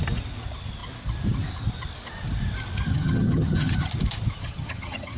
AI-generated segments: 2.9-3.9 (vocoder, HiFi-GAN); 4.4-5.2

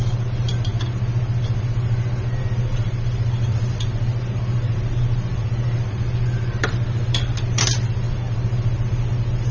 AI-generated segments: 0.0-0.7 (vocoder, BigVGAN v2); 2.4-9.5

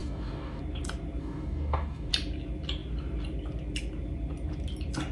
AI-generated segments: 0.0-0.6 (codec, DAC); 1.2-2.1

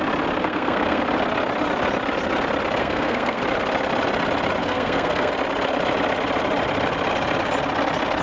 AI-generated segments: 0.4-1.0 (codec, SNAC); 2.8-3.4; 4.6-5.3

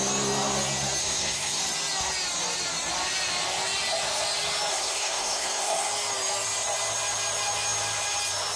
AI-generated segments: 1.0-1.6 (codec, SNAC); 4.7-5.9

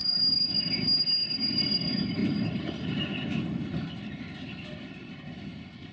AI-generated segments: 2.2-3.0 (vocoder, BigVGAN v2)

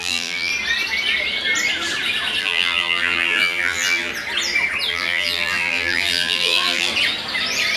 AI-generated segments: 0.0-0.5 (vocoder, BigVGAN v2); 2.4-4.1; 4.9-6.9

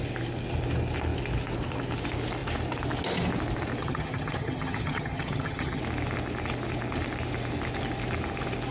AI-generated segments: 3.8-5.8 (vocoder, HiFi-GAN)